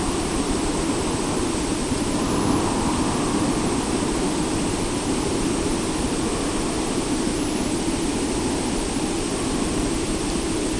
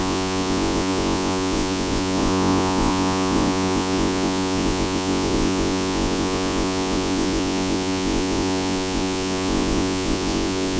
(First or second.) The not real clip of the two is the second